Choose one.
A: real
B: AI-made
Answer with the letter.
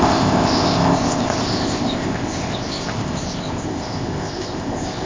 B